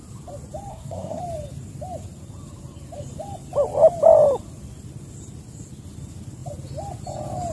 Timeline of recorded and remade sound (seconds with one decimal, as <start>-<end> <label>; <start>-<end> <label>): 0.0-0.7 recorded; 0.7-1.2 remade; 1.2-7.5 recorded